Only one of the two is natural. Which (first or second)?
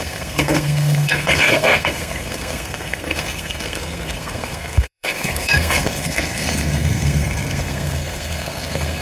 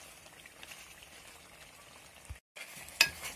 second